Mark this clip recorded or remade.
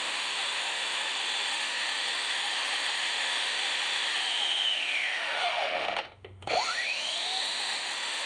remade